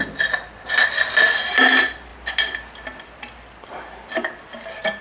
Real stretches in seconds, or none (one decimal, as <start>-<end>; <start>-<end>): 0.0-5.0